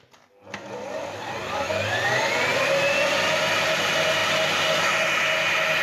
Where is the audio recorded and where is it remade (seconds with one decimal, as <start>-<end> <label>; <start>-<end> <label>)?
0.0-2.5 remade; 2.5-3.1 recorded; 3.1-5.8 remade